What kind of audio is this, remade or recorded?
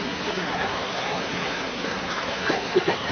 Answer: remade